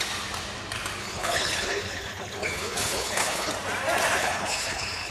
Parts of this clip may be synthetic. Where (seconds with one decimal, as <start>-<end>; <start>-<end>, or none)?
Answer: 1.0-3.5; 4.2-5.1